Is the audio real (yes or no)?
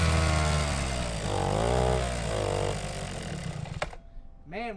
yes